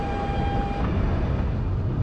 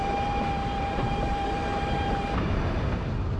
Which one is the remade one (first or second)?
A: second